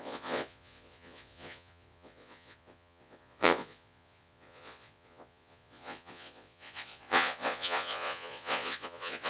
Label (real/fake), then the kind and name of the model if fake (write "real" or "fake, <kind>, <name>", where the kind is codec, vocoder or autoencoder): fake, vocoder, Vocos